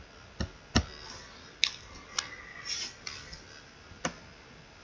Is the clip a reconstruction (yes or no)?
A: no